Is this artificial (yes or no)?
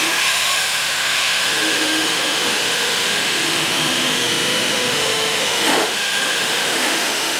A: yes